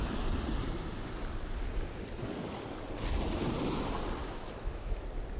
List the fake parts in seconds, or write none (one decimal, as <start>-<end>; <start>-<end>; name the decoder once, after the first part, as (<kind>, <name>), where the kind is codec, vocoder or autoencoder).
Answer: 4.2-5.0 (autoencoder, DAC-VAE)